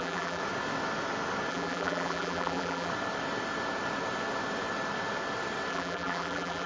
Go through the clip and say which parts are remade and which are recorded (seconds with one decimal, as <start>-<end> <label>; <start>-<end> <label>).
0.0-0.4 remade; 0.4-1.5 recorded; 1.5-2.9 remade; 2.9-5.7 recorded; 5.7-6.7 remade